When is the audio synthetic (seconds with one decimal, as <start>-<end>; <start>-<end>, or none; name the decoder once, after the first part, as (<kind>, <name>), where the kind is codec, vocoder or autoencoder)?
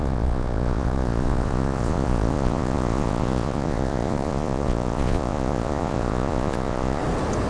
0.0-7.0 (vocoder, Vocos)